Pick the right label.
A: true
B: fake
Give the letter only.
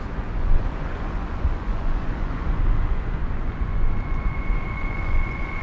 B